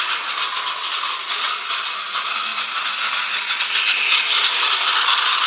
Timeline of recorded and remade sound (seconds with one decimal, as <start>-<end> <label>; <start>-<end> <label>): 0.0-5.5 recorded